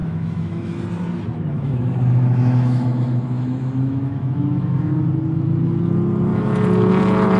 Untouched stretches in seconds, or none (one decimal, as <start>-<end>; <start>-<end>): 0.8-1.5; 4.9-7.4